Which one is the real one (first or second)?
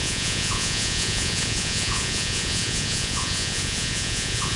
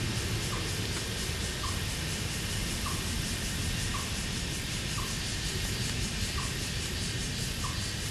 second